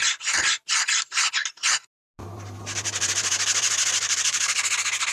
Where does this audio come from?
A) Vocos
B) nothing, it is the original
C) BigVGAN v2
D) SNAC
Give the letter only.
B